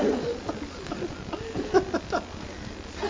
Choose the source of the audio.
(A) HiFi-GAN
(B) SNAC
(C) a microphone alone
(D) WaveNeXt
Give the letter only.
C